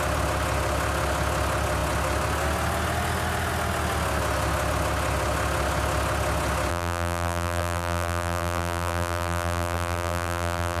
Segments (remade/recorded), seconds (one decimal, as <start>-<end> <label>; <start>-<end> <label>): 0.0-6.7 recorded; 6.7-10.8 remade

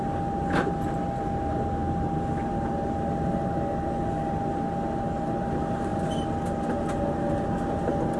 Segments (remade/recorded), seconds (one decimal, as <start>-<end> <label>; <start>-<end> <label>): 0.0-8.2 recorded